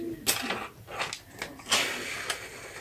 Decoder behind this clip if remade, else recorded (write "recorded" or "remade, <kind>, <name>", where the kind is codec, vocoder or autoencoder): recorded